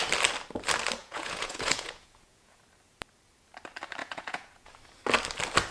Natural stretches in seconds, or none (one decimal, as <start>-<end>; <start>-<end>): 0.0-1.0; 2.6-4.0; 4.7-5.7